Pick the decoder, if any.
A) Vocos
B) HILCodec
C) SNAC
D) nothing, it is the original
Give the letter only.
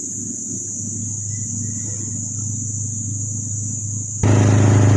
D